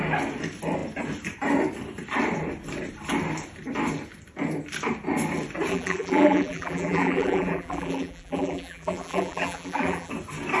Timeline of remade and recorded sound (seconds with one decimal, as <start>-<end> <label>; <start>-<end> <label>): 0.0-5.7 recorded; 5.7-10.1 remade; 10.1-10.6 recorded